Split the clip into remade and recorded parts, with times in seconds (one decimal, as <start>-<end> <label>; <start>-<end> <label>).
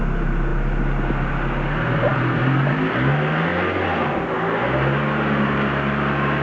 0.0-6.4 recorded